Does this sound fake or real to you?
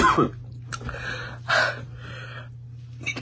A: real